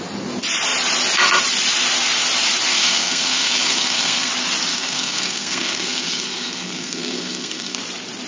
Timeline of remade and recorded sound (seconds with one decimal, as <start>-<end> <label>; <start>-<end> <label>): 0.0-2.7 recorded; 2.7-4.3 remade; 4.3-4.7 recorded; 4.7-7.8 remade; 7.8-8.3 recorded